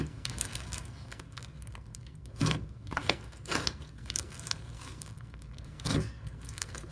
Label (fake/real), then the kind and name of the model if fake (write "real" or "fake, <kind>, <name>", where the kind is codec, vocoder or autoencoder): fake, codec, SNAC